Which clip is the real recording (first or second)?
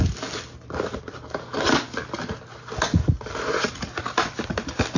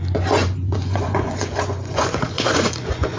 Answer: first